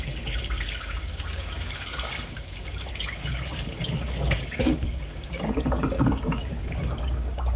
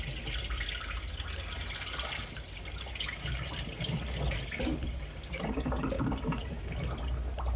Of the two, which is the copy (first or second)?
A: first